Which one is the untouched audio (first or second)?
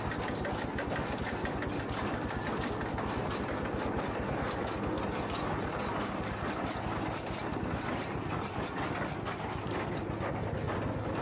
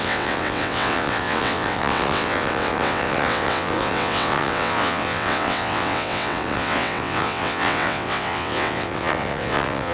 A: first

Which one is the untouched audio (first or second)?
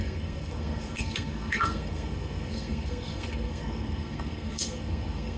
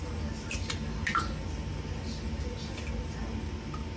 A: second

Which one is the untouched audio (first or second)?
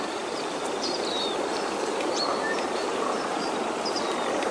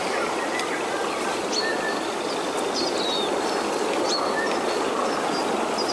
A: second